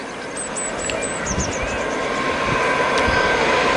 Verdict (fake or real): real